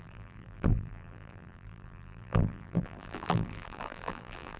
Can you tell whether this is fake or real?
fake